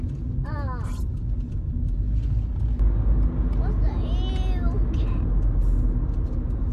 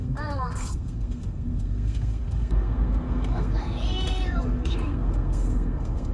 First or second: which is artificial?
second